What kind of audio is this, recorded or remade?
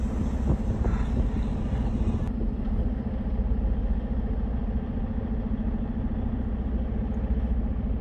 recorded